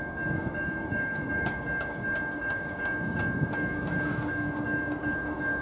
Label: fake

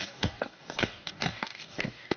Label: fake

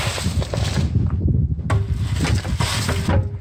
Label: real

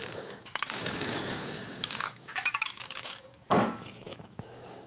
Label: fake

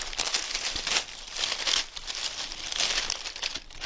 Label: real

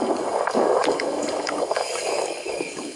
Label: fake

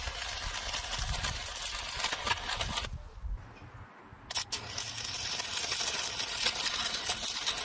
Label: real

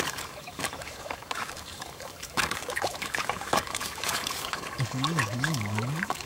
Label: fake